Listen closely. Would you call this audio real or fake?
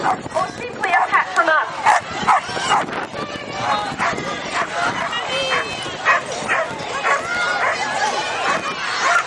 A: real